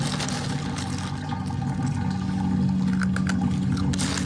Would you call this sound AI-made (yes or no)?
no